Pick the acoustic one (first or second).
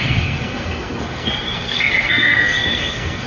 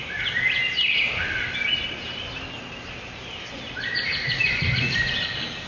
second